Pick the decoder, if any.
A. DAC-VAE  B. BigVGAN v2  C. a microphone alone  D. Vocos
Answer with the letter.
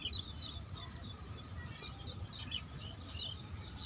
C